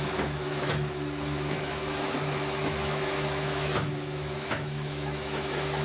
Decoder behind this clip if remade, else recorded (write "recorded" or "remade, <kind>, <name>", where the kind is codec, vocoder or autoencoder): remade, autoencoder, DAC-VAE